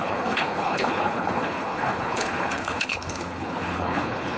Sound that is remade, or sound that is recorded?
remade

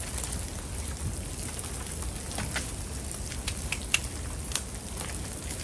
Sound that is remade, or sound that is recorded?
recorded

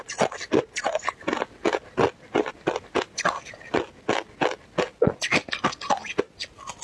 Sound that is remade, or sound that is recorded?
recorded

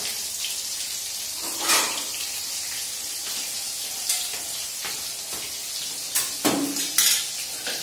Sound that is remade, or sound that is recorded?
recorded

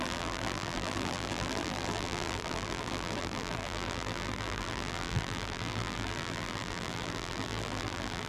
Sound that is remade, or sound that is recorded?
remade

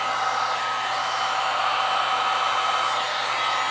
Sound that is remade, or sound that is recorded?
recorded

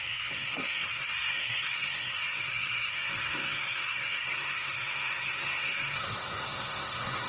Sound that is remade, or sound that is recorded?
remade